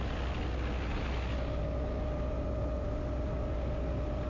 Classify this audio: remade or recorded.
recorded